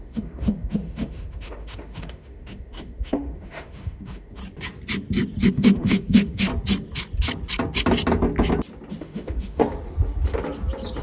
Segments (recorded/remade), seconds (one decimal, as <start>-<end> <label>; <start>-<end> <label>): 0.0-4.4 remade; 4.4-5.5 recorded; 5.5-6.5 remade; 6.5-9.0 recorded; 9.0-9.6 remade; 9.6-11.0 recorded